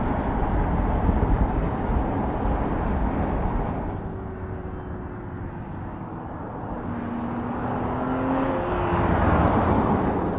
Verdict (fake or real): real